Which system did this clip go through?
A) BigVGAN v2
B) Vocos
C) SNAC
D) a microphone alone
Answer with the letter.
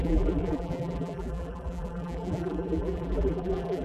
A